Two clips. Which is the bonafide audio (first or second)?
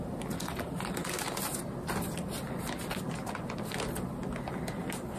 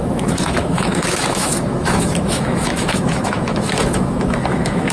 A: first